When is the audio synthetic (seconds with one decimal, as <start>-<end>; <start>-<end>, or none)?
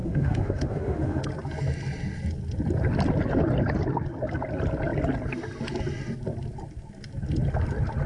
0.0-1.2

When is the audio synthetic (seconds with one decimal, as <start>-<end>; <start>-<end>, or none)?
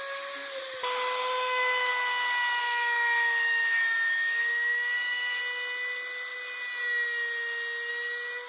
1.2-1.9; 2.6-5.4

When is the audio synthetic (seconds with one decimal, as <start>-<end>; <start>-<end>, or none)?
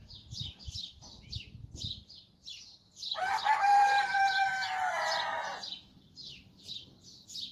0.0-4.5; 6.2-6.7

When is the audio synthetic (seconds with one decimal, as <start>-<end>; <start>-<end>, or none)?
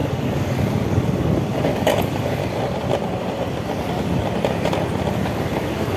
0.0-2.4; 5.1-6.0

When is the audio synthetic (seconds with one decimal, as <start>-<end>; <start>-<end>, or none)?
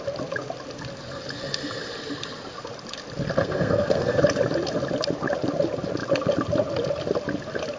3.4-4.2